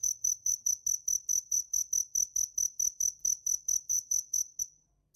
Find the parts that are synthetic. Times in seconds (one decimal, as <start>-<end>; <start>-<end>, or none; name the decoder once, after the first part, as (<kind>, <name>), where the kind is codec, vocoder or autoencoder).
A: 0.0-0.7 (vocoder, BigVGAN v2); 1.3-1.9; 3.9-4.6